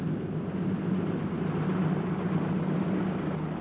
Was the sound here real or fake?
real